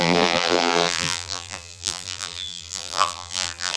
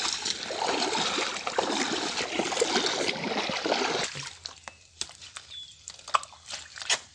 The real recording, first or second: second